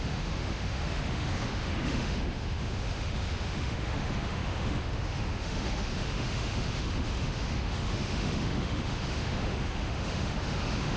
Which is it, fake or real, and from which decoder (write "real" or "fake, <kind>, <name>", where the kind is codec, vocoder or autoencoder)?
fake, autoencoder, DAC-VAE